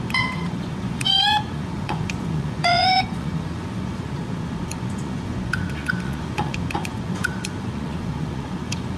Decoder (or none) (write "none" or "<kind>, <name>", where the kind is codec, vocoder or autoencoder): vocoder, Vocos